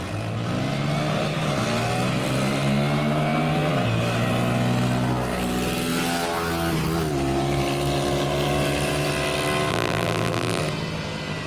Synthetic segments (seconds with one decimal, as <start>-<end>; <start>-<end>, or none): 9.7-10.6